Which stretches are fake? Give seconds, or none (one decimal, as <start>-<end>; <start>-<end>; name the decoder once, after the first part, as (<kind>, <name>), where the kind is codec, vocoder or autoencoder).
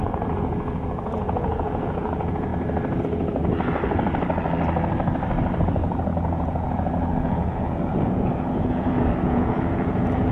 0.0-2.5 (vocoder, Vocos); 3.0-3.4; 5.6-10.3